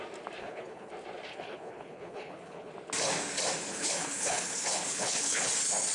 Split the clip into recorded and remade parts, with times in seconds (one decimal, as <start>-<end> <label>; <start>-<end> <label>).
0.0-0.4 recorded; 0.4-0.9 remade; 0.9-1.3 recorded; 1.3-2.7 remade; 2.7-3.7 recorded; 3.7-5.5 remade; 5.5-5.9 recorded